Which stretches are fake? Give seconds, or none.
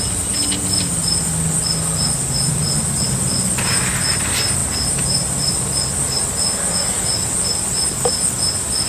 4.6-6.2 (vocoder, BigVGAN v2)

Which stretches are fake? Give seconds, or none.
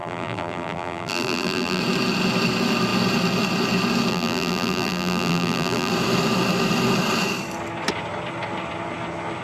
0.0-1.8 (vocoder, BigVGAN v2); 4.1-5.9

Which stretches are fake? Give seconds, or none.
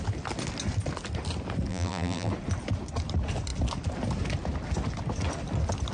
1.7-2.3 (vocoder, BigVGAN v2)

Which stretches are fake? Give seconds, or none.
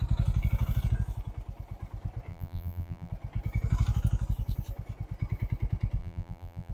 2.3-3.1 (vocoder, BigVGAN v2); 6.0-6.7